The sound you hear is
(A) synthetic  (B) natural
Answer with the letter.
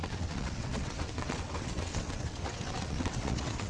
A